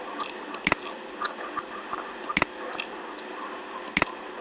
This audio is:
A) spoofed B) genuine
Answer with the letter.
B